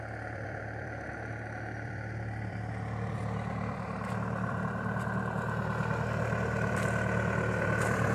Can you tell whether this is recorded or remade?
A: remade